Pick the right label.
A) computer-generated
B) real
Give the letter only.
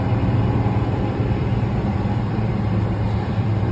A